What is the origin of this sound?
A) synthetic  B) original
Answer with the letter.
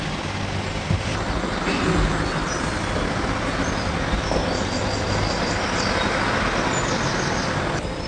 B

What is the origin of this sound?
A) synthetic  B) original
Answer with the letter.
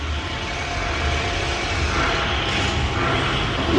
A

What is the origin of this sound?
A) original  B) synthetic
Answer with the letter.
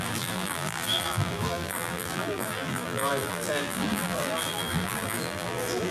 B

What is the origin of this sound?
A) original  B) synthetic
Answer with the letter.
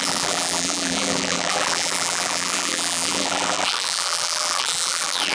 B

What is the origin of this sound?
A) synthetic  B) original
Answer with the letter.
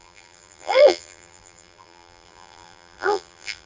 A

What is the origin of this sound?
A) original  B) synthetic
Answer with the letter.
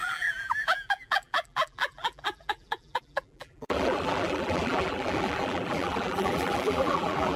B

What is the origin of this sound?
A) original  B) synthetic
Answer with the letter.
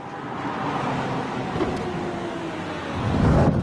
A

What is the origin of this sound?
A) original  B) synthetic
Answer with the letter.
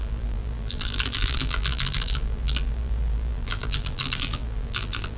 B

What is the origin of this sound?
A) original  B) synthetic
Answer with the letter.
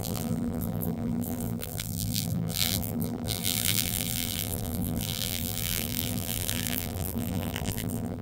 B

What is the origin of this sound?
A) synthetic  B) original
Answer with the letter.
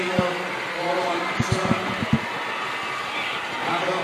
B